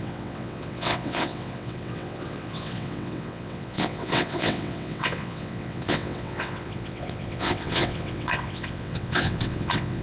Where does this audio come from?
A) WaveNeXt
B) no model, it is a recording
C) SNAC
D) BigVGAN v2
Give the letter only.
A